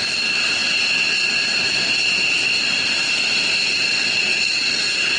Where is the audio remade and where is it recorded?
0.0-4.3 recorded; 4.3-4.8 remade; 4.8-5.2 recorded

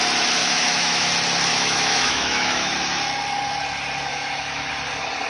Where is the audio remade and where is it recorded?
0.0-0.4 recorded; 0.4-1.1 remade; 1.1-1.5 recorded; 1.5-2.7 remade; 2.7-4.1 recorded; 4.1-4.7 remade; 4.7-5.3 recorded

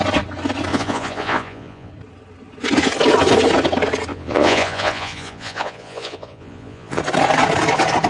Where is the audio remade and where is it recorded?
0.0-0.7 recorded; 0.7-1.9 remade; 1.9-4.1 recorded; 4.1-7.0 remade; 7.0-8.1 recorded

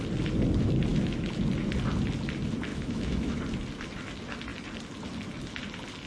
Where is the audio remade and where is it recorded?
0.0-0.9 recorded; 0.9-1.4 remade; 1.4-2.7 recorded; 2.7-3.4 remade; 3.4-6.1 recorded

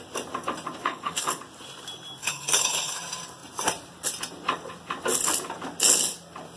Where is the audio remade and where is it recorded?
0.0-0.8 recorded; 0.8-1.4 remade; 1.4-2.2 recorded; 2.2-3.0 remade; 3.0-6.6 recorded

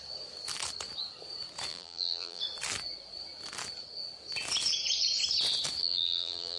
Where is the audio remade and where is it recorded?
0.0-1.7 recorded; 1.7-2.4 remade; 2.4-5.8 recorded; 5.8-6.6 remade